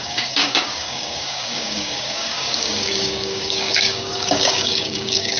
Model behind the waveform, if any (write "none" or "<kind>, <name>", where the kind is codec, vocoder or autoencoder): codec, DAC